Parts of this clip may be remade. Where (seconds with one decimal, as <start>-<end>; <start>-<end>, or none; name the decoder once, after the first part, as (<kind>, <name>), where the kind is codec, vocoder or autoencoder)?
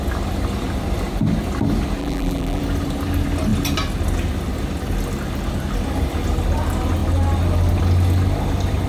2.0-2.6 (vocoder, BigVGAN v2)